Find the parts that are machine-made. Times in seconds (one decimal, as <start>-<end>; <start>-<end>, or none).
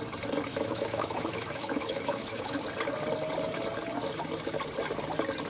0.5-2.6